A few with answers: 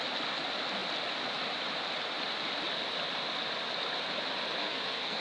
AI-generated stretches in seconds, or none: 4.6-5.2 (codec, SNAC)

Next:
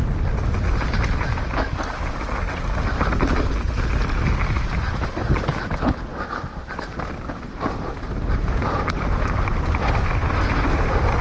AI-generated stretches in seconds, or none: 6.1-9.9 (vocoder, BigVGAN v2)

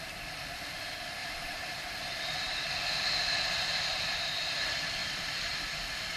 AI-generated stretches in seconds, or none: 1.2-2.7 (vocoder, BigVGAN v2); 5.0-5.8

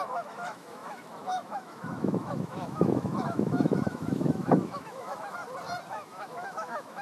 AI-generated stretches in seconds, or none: 0.0-5.4 (autoencoder, DAC-VAE); 5.9-7.0

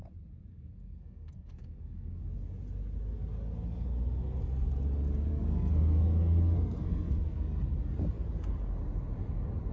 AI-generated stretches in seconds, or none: 0.5-2.2 (codec, SNAC); 5.3-7.6

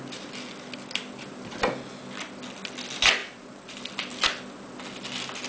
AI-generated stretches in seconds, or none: 3.2-3.8 (vocoder, BigVGAN v2)